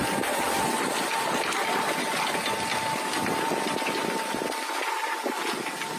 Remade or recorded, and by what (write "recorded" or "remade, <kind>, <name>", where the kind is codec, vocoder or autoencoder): recorded